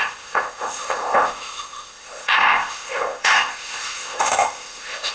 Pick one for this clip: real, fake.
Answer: fake